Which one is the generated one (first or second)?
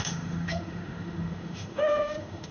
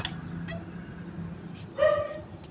first